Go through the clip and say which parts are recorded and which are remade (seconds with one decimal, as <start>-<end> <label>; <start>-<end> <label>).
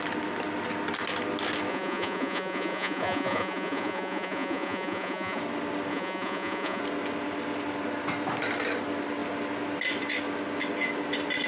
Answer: 0.0-1.7 recorded; 1.7-5.4 remade; 5.4-5.9 recorded; 5.9-6.8 remade; 6.8-11.5 recorded